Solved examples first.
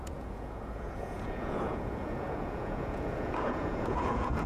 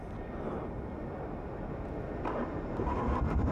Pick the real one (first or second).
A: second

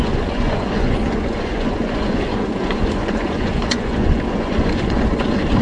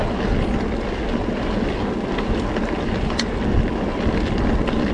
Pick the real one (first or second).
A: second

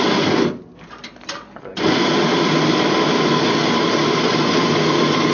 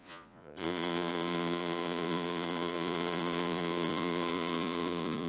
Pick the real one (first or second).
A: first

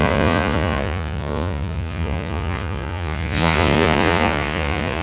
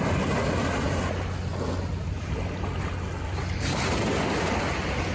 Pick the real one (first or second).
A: second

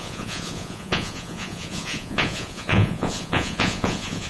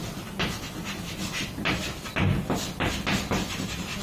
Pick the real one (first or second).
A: second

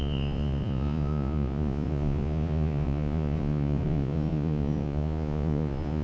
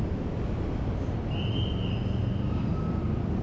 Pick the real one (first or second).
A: second